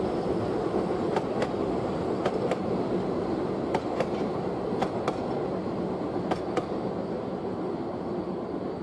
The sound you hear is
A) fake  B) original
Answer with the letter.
B